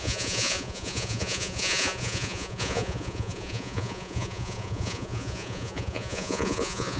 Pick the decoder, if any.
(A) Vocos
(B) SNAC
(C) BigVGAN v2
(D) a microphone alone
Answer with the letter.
A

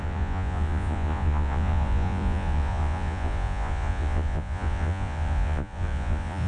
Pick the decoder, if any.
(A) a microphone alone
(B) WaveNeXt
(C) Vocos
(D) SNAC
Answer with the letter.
C